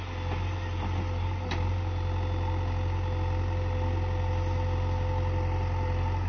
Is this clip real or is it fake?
real